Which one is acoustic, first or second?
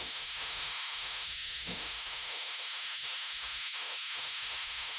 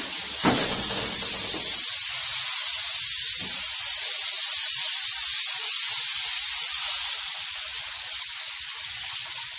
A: second